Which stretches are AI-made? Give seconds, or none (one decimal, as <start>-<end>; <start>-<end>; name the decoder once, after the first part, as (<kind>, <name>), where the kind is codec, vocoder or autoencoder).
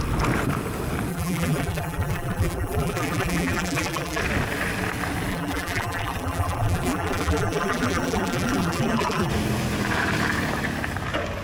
1.1-4.2 (vocoder, BigVGAN v2); 5.3-9.3